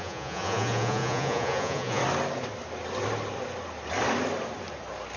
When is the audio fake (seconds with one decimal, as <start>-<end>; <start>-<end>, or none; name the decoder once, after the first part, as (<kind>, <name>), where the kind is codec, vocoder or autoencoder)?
0.0-2.0 (vocoder, Vocos)